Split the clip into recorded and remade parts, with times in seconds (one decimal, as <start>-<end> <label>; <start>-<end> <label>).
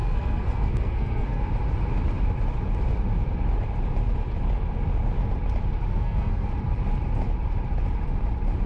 0.0-1.5 remade; 1.5-5.9 recorded; 5.9-6.5 remade; 6.5-8.7 recorded